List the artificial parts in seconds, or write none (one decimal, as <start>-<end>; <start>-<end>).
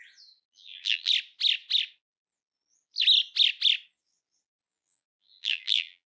0.5-1.1; 4.7-6.1